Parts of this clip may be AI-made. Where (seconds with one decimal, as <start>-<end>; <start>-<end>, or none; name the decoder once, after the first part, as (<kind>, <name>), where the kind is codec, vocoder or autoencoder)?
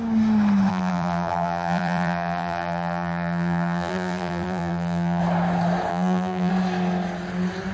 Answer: 0.7-5.2 (vocoder, BigVGAN v2); 5.9-6.5